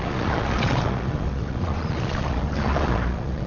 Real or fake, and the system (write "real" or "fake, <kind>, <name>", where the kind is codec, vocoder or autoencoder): fake, vocoder, Vocos